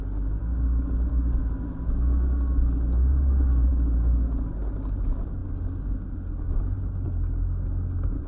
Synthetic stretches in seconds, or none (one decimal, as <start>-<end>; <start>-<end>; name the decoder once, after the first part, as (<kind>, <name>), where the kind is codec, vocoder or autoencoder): none